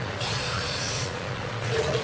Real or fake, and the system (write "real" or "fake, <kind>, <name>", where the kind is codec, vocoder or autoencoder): fake, vocoder, Vocos